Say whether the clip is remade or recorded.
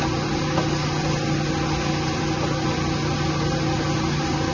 recorded